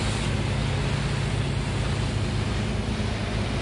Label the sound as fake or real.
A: real